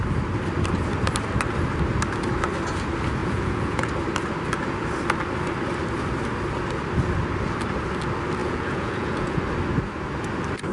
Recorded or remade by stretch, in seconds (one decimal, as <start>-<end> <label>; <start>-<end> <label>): 0.0-3.2 recorded; 3.2-3.9 remade; 3.9-8.4 recorded; 8.4-9.4 remade; 9.4-10.7 recorded